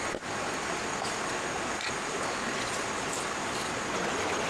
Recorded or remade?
recorded